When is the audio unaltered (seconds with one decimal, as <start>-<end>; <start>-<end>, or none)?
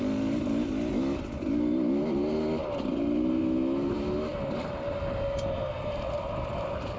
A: 0.0-7.0